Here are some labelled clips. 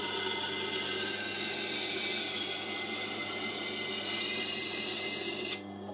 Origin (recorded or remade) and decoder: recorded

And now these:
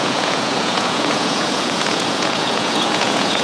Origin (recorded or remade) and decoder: remade, vocoder, Vocos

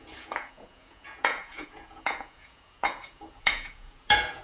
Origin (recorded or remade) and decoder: remade, vocoder, Vocos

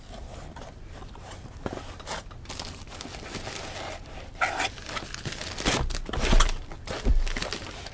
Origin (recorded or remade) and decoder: recorded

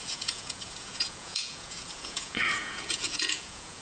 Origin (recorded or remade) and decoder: remade, vocoder, Vocos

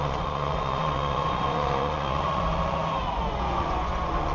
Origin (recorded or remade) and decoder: remade, vocoder, Vocos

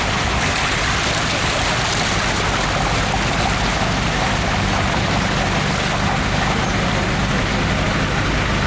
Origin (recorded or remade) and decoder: recorded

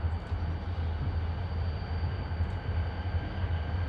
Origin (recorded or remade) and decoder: recorded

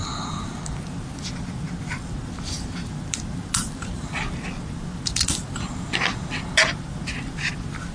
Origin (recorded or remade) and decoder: recorded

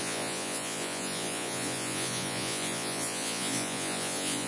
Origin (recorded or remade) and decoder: remade, vocoder, Vocos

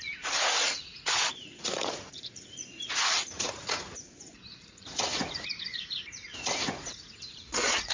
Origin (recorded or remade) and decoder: remade, vocoder, Vocos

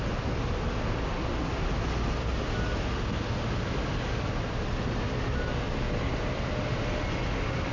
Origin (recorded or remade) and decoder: recorded